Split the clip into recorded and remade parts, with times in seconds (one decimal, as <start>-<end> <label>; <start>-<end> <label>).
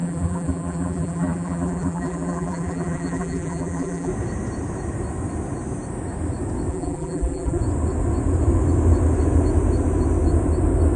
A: 0.0-4.1 remade; 4.1-6.7 recorded; 6.7-7.6 remade; 7.6-11.0 recorded